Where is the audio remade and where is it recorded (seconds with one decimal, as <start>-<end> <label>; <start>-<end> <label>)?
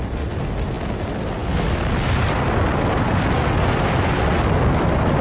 0.0-5.2 recorded